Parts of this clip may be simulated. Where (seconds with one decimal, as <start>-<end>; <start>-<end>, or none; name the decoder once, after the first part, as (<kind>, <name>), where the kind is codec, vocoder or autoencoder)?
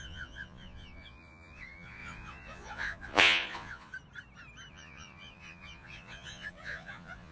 0.0-3.9 (vocoder, Vocos); 4.7-7.3